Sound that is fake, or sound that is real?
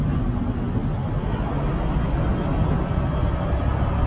real